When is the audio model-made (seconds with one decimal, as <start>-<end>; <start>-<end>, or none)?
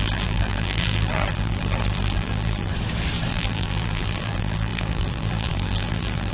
0.0-2.7; 3.3-6.3